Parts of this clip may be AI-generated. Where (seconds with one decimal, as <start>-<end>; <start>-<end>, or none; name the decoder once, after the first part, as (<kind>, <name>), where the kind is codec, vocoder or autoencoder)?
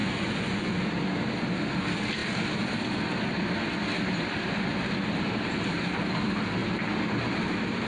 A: 0.0-0.7 (vocoder, Vocos)